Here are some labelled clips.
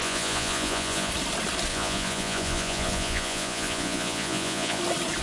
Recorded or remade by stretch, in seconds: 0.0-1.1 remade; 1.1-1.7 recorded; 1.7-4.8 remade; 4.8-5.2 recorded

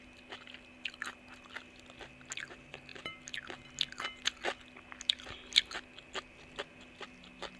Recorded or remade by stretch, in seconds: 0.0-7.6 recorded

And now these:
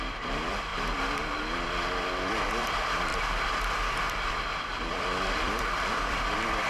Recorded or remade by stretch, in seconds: 0.0-0.7 remade; 0.7-2.0 recorded; 2.0-6.7 remade